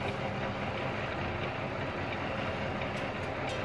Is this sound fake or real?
real